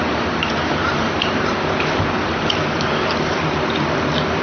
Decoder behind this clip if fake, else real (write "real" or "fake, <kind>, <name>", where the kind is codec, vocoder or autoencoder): fake, vocoder, BigVGAN v2